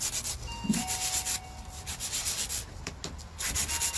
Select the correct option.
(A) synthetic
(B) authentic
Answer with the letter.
B